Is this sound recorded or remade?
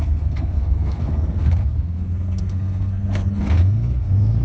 remade